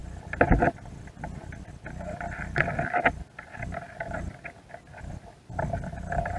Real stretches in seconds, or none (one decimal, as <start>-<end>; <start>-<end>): 0.0-6.4